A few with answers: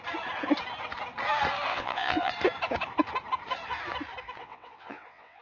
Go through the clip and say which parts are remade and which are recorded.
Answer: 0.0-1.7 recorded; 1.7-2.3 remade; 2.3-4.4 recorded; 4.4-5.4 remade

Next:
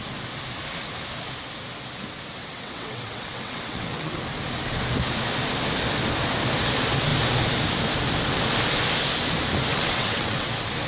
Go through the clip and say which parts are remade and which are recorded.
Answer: 0.0-2.4 recorded; 2.4-4.2 remade; 4.2-9.7 recorded; 9.7-10.5 remade; 10.5-10.9 recorded